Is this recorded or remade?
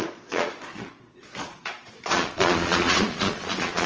remade